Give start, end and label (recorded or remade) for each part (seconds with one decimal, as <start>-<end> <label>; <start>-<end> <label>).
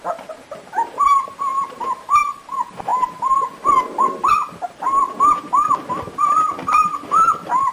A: 0.0-7.7 recorded